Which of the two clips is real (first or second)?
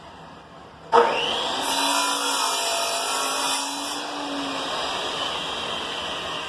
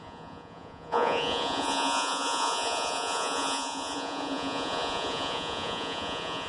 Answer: first